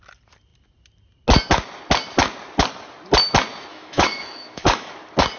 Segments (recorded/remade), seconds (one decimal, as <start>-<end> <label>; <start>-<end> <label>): 0.0-3.7 recorded; 3.7-4.9 remade; 4.9-5.4 recorded